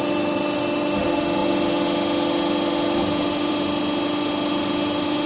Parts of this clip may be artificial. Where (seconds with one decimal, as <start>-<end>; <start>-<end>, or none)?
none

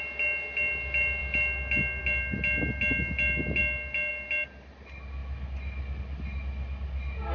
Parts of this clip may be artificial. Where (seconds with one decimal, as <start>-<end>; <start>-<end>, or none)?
none

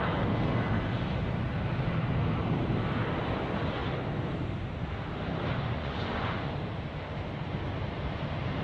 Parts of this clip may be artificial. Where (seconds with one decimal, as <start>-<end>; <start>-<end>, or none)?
5.5-6.5

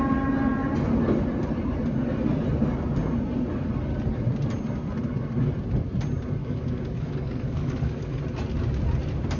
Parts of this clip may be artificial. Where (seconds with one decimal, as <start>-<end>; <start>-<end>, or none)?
6.4-8.2

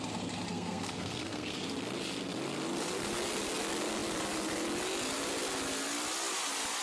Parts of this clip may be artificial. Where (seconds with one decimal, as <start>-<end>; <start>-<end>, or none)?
0.5-1.6

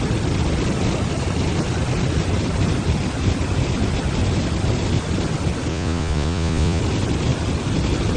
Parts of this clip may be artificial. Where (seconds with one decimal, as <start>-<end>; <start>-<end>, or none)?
5.7-6.8

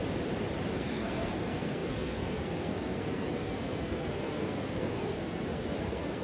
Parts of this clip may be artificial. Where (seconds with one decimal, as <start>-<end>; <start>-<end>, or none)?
0.7-6.2